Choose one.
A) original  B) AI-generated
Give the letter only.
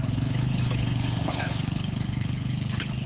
B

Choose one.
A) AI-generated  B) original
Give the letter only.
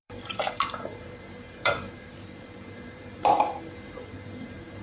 A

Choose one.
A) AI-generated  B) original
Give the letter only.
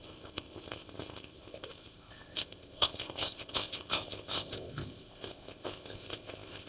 A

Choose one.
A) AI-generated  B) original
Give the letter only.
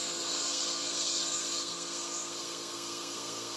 A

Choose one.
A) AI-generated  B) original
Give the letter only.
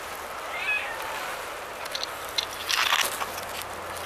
B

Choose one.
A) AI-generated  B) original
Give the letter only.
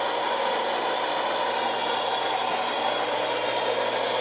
B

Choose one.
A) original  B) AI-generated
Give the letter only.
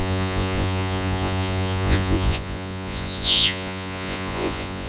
B